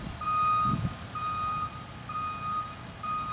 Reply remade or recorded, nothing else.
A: recorded